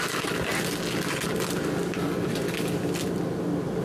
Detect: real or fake real